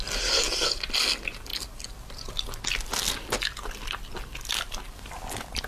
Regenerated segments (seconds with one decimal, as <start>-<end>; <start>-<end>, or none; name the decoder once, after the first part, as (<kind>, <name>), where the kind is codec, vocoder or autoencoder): none